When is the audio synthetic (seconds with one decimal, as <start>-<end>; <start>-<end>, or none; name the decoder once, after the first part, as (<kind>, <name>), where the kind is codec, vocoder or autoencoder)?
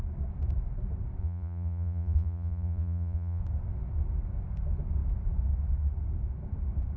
1.2-3.4 (vocoder, Vocos)